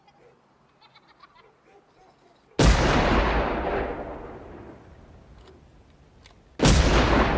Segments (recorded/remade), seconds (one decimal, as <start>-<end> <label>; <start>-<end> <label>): 0.0-7.4 recorded